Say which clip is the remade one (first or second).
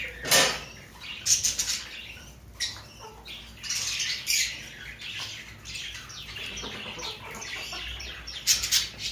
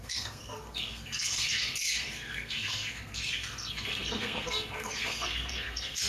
second